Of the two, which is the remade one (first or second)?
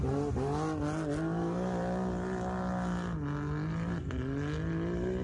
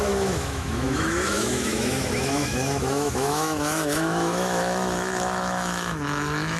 second